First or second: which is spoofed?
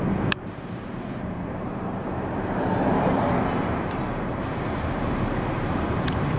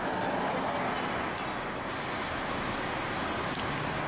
first